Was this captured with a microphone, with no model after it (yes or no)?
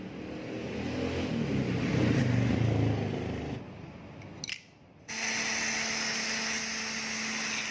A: yes